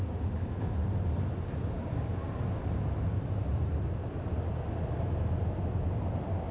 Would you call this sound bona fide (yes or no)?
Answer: yes